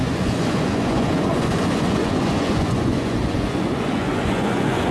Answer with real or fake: fake